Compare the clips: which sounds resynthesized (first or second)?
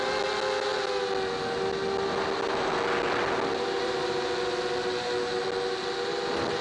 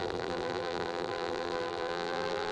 second